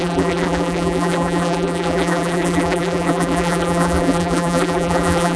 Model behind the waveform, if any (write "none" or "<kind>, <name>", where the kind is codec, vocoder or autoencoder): vocoder, BigVGAN v2